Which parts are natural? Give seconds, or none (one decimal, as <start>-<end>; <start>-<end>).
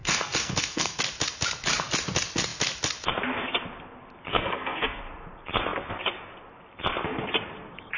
1.0-4.3; 5.0-8.0